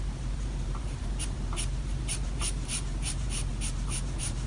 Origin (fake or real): fake